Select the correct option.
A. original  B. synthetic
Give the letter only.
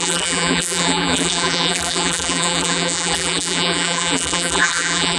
B